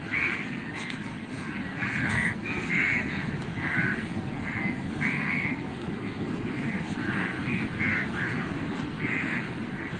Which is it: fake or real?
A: fake